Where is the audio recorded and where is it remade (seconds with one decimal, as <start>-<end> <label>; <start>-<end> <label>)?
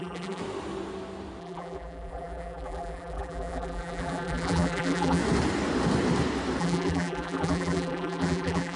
0.0-0.4 remade; 0.4-1.4 recorded; 1.4-5.2 remade; 5.2-6.6 recorded; 6.6-8.8 remade